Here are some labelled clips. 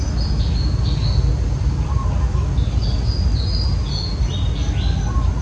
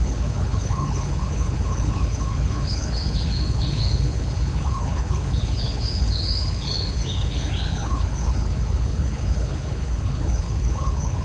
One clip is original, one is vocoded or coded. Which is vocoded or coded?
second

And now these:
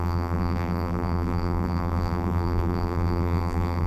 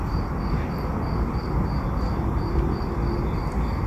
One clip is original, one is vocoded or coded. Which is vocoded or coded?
first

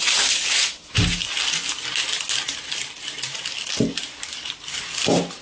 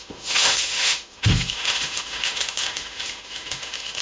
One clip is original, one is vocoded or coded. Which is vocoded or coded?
second